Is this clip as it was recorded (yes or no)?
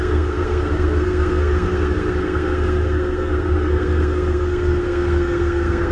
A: no